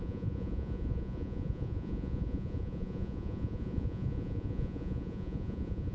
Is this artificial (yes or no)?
yes